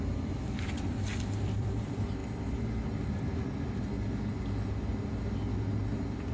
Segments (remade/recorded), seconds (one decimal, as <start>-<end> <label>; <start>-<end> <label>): 0.0-2.2 remade; 2.2-6.3 recorded